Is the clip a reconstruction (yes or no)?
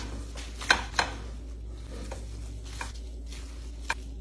no